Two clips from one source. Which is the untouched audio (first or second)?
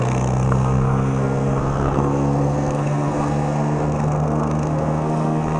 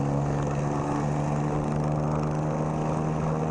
second